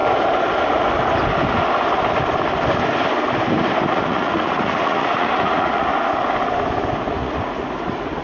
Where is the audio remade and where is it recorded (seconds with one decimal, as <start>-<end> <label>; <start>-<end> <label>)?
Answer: 0.0-3.9 recorded; 3.9-5.9 remade; 5.9-7.1 recorded; 7.1-8.2 remade

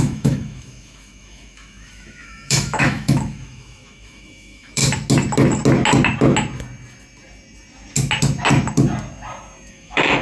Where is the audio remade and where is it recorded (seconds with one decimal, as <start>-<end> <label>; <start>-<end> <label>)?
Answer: 0.0-4.8 remade; 4.8-9.7 recorded; 9.7-10.2 remade

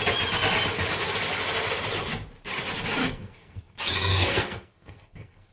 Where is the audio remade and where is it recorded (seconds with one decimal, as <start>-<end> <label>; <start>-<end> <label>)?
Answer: 0.0-3.0 recorded; 3.0-5.5 remade

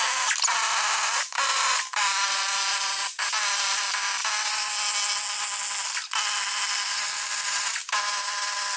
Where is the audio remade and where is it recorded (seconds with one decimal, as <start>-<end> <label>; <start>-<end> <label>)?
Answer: 0.0-0.5 recorded; 0.5-3.8 remade; 3.8-6.9 recorded; 6.9-8.0 remade; 8.0-8.8 recorded

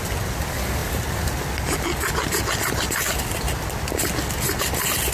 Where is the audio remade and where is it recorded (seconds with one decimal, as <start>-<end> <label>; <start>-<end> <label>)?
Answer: 0.0-5.1 recorded

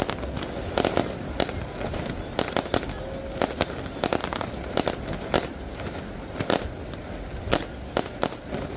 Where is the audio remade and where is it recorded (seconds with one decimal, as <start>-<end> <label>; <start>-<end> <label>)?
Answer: 0.0-4.2 recorded; 4.2-4.9 remade; 4.9-5.5 recorded; 5.5-6.6 remade; 6.6-8.8 recorded